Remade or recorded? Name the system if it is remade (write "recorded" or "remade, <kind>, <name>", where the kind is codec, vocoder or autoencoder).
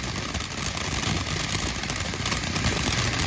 recorded